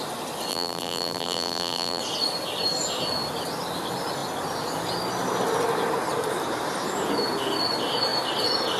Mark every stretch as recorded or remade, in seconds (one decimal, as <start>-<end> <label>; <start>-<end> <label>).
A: 0.0-0.5 recorded; 0.5-2.0 remade; 2.0-8.8 recorded